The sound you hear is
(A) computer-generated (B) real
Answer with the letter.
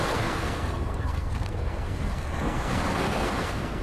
A